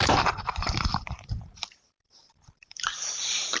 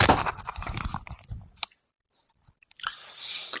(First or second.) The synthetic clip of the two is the first